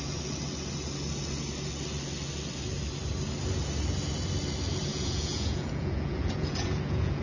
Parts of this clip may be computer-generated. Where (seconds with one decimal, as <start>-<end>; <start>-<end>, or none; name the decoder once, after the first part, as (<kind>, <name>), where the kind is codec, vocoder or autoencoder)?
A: 4.9-7.2 (vocoder, Vocos)